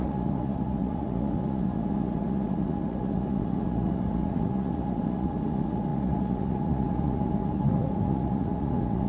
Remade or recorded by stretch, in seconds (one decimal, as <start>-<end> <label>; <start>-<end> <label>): 0.0-9.1 remade